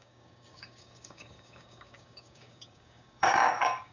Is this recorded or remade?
remade